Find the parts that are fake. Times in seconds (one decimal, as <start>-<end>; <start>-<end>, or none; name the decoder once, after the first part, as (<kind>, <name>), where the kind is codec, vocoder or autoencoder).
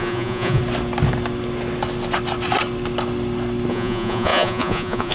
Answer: 0.0-0.6 (vocoder, Vocos); 3.7-5.1